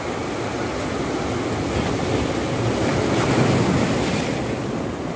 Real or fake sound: real